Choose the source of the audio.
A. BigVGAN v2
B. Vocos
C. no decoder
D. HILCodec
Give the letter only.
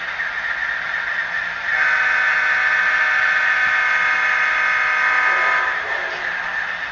C